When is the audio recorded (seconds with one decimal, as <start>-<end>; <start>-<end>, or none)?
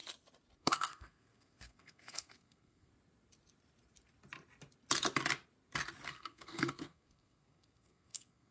0.0-0.6; 2.9-6.1